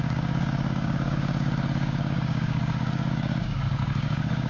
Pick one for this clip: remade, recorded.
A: remade